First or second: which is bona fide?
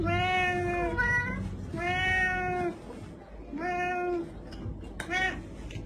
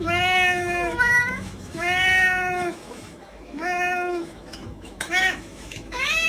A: first